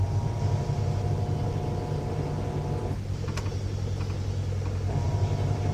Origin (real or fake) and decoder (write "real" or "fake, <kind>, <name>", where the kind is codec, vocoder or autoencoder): real